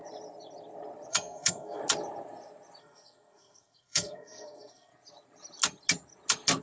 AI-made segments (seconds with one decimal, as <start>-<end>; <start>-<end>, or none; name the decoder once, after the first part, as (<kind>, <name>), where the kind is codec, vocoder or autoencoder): 1.1-1.8 (codec, SNAC); 2.8-4.9